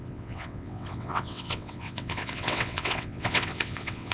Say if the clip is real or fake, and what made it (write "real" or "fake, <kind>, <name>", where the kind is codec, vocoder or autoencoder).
fake, vocoder, WaveNeXt